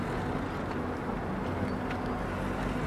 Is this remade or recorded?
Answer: recorded